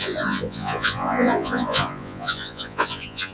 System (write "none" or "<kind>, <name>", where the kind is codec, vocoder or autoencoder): vocoder, Vocos